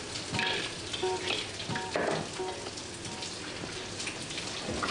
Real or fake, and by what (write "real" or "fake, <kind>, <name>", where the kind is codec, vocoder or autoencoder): real